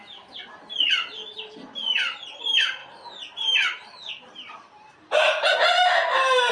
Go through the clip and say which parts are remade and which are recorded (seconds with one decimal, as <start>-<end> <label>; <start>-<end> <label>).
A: 0.0-2.4 recorded; 2.4-6.5 remade